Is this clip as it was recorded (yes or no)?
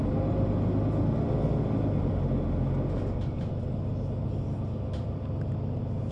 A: yes